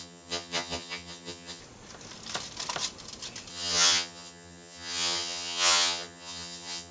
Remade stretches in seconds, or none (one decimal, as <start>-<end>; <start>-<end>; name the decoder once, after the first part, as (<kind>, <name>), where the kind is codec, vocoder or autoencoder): 0.0-1.6 (vocoder, HiFi-GAN); 3.5-6.9